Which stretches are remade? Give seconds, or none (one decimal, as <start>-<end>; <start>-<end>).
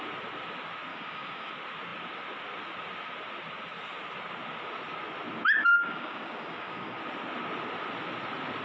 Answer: 0.9-1.5; 5.7-7.0